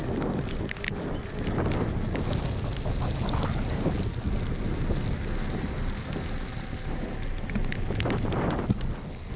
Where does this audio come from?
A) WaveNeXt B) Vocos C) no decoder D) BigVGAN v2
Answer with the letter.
C